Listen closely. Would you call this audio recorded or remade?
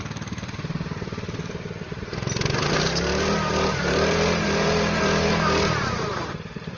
remade